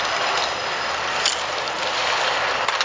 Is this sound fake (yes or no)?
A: no